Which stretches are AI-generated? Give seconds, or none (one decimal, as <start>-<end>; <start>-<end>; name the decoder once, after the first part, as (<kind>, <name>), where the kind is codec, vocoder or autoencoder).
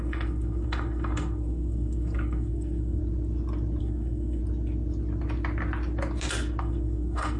0.0-3.0 (codec, SNAC); 3.8-4.4; 6.6-7.4